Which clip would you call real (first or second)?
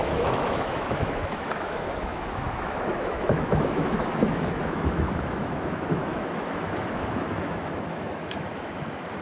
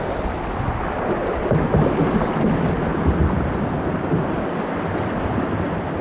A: second